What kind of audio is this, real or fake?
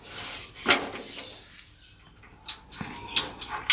real